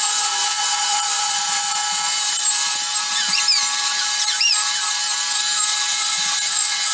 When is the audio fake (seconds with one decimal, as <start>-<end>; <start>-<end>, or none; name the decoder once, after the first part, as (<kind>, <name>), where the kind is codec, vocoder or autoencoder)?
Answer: 0.0-1.8 (vocoder, Vocos); 5.9-6.9